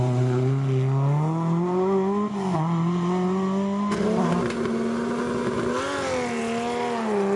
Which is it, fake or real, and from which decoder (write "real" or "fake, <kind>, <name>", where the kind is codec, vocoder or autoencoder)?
real